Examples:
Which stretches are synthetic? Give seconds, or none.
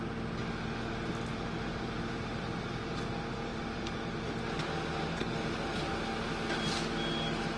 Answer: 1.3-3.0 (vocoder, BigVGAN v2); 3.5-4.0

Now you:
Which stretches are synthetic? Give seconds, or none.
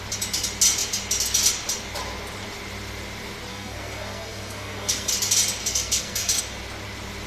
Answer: 3.5-5.1 (codec, SNAC); 5.6-6.4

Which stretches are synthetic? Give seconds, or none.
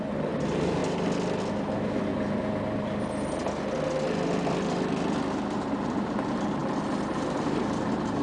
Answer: 0.0-0.8 (vocoder, BigVGAN v2); 1.5-2.1; 5.7-6.6; 7.1-8.2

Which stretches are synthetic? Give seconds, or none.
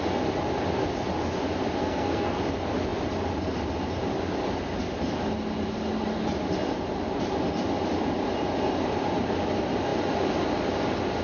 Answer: 1.8-2.4 (codec, SNAC)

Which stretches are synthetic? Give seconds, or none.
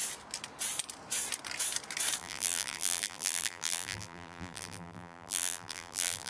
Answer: 2.2-6.3 (vocoder, BigVGAN v2)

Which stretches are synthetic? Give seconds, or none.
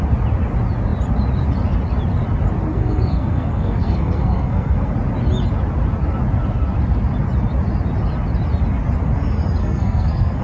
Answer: 2.7-4.9 (codec, SNAC); 9.6-10.4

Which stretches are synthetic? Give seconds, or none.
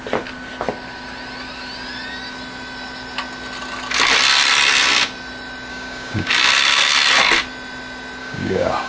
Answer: 5.7-6.3 (codec, DAC); 8.2-8.9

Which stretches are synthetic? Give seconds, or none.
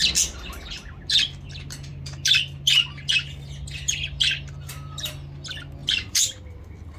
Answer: 5.8-6.4 (vocoder, BigVGAN v2)